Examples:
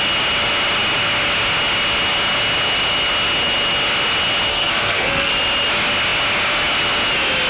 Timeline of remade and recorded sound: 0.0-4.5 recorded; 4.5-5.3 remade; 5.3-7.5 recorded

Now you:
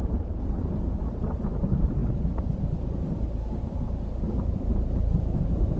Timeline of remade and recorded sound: 0.0-5.8 remade

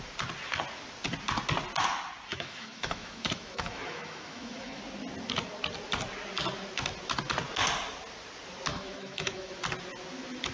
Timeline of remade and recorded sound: 0.0-2.3 recorded; 2.3-4.8 remade; 4.8-8.7 recorded; 8.7-9.5 remade; 9.5-10.5 recorded

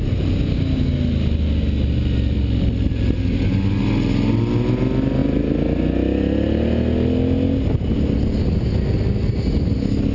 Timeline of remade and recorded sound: 0.0-10.1 recorded

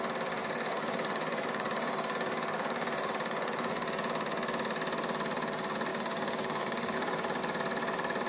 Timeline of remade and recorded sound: 0.0-0.4 recorded; 0.4-3.7 remade; 3.7-5.9 recorded; 5.9-7.4 remade; 7.4-8.3 recorded

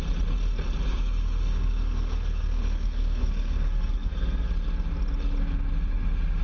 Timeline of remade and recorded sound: 0.0-0.9 recorded; 0.9-4.5 remade; 4.5-6.4 recorded

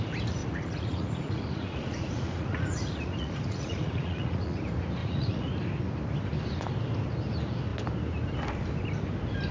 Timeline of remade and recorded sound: 0.0-0.4 recorded; 0.4-4.6 remade; 4.6-5.0 recorded; 5.0-5.5 remade; 5.5-9.5 recorded